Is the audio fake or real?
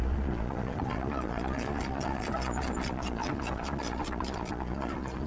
fake